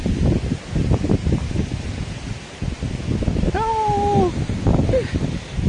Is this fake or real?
real